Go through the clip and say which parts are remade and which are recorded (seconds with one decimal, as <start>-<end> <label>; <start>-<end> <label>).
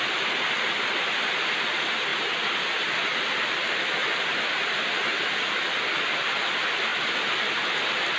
0.0-5.1 recorded; 5.1-6.5 remade; 6.5-6.9 recorded; 6.9-7.6 remade; 7.6-8.2 recorded